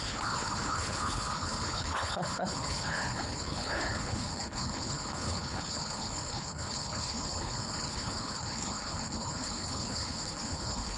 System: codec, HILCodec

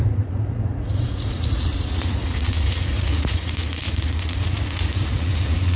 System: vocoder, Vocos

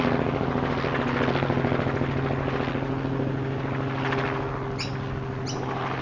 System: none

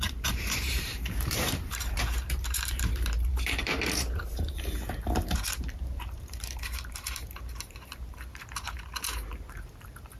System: vocoder, BigVGAN v2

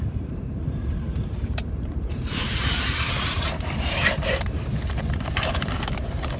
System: vocoder, BigVGAN v2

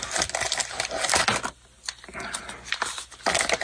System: none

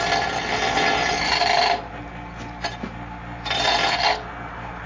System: none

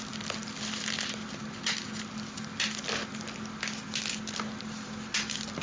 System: none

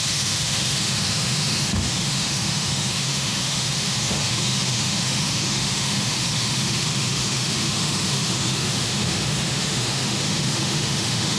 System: autoencoder, DAC-VAE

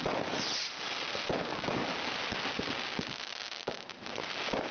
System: none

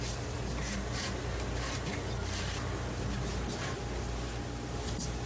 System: none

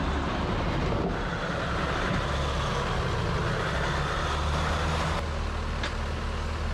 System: none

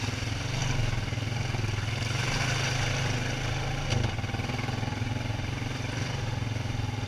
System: none